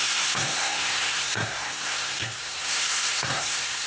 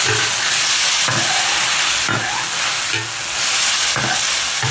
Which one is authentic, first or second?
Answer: second